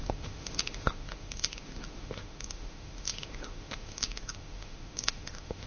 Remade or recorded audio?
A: remade